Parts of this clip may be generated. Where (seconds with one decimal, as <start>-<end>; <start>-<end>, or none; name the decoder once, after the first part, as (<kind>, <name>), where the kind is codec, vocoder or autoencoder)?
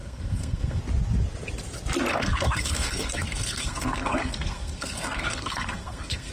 0.0-0.8 (codec, SNAC); 2.1-6.3